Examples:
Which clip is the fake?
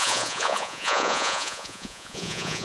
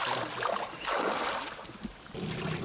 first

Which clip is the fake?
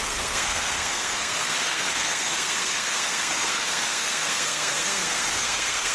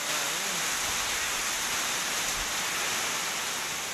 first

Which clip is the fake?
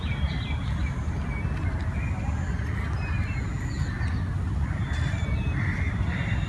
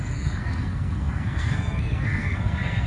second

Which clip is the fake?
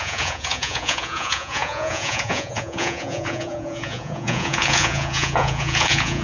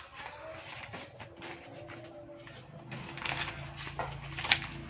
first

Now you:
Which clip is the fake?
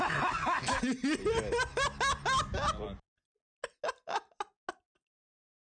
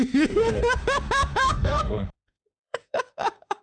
second